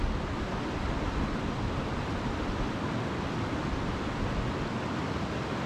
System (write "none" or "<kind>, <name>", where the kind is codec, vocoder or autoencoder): none